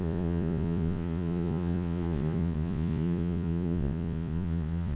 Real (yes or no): no